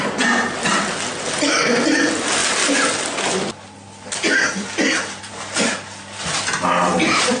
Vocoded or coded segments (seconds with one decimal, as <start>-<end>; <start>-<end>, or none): none